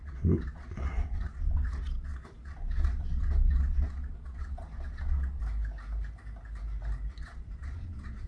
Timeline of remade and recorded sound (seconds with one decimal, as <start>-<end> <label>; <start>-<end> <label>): 0.0-5.4 remade; 5.4-7.2 recorded; 7.2-8.3 remade